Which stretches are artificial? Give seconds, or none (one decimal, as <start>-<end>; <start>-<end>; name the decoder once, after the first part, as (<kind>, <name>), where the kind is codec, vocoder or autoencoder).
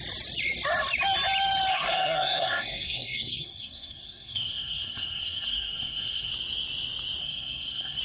1.7-6.3 (codec, SNAC); 7.2-8.0